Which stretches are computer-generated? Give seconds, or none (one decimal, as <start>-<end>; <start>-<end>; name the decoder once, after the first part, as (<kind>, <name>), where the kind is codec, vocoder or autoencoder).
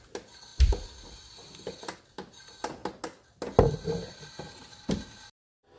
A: none